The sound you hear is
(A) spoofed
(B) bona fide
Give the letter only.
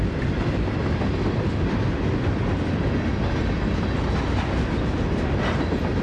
B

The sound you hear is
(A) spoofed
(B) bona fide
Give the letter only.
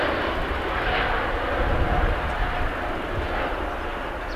B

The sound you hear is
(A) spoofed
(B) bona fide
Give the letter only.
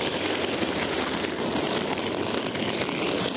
B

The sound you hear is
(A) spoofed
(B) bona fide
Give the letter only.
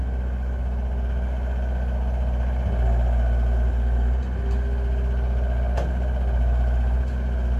B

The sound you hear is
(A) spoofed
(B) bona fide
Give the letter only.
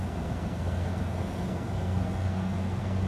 A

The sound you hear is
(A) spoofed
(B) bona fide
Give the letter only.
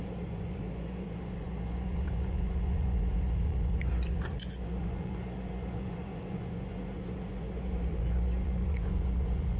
A